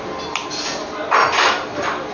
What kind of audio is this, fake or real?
real